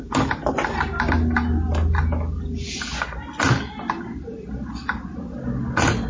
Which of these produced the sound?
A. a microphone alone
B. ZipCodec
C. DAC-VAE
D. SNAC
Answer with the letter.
A